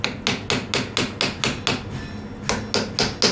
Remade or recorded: recorded